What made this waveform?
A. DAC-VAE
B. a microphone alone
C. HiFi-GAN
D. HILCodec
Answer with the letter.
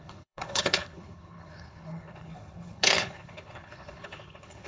D